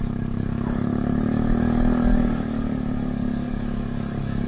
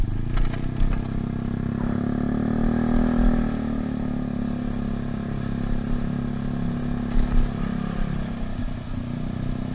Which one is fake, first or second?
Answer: first